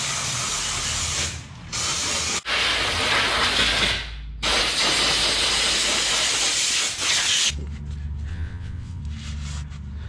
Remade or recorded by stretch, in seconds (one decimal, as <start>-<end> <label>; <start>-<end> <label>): 0.0-8.3 recorded; 8.3-9.0 remade; 9.0-10.1 recorded